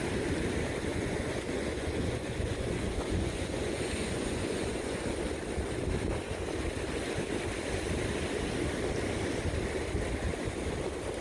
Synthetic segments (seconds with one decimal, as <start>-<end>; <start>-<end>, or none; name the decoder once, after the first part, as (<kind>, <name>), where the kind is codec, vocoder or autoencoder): 0.9-5.0 (vocoder, Vocos)